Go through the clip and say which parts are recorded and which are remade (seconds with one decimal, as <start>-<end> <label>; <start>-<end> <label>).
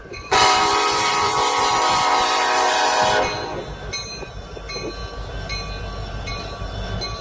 0.0-3.0 remade; 3.0-7.2 recorded